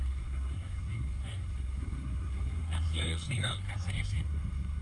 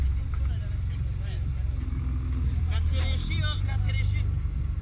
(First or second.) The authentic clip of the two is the second